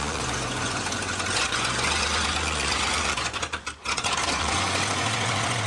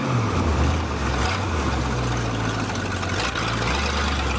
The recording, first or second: second